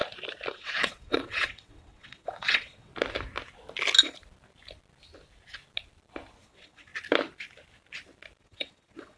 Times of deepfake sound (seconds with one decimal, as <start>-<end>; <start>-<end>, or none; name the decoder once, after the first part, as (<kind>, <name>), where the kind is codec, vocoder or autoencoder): 0.5-2.9 (vocoder, WaveNeXt); 6.4-6.9; 8.4-9.2

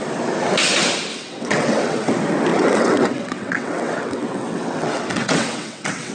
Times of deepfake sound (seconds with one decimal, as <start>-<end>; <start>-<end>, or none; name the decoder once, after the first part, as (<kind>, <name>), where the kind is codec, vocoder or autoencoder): 1.1-2.1 (vocoder, WaveNeXt); 2.5-6.1